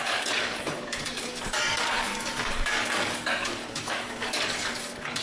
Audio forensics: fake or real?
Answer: fake